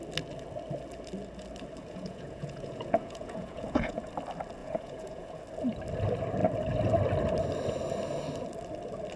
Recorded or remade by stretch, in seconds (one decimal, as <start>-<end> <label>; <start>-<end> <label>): 0.0-1.8 recorded; 1.8-4.1 remade; 4.1-4.6 recorded; 4.6-5.4 remade; 5.4-9.2 recorded